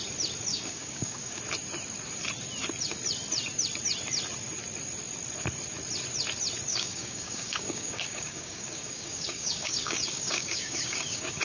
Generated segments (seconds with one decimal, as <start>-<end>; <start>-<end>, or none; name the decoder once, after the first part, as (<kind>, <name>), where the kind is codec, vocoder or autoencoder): 0.5-1.4 (codec, DAC); 6.7-11.4